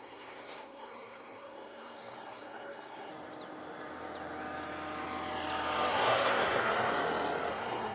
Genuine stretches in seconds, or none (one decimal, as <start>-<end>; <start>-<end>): 3.1-5.9; 6.9-7.5